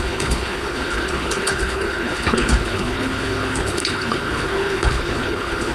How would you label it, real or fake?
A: fake